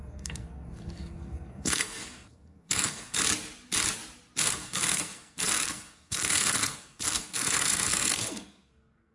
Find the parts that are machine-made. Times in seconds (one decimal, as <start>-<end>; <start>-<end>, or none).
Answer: 0.0-3.2; 4.4-9.1